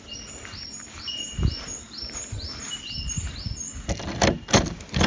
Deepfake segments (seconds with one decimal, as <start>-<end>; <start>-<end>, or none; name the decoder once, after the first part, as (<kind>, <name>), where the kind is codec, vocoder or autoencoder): none